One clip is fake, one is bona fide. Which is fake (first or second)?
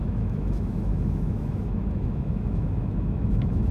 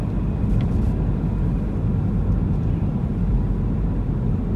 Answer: first